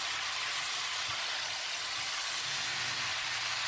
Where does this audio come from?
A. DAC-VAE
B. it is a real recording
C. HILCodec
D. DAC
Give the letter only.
B